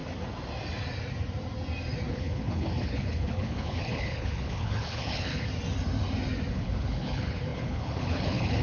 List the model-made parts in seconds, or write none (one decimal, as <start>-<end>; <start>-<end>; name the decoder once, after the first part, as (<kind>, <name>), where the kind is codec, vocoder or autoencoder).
2.1-5.5 (codec, HILCodec); 6.5-8.6